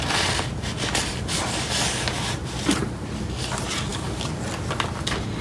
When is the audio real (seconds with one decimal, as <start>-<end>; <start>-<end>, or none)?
0.0-3.9; 4.4-5.4